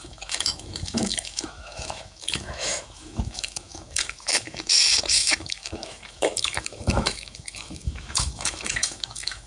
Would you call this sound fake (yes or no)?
yes